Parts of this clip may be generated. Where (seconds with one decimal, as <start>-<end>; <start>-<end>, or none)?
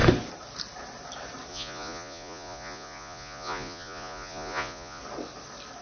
1.5-5.0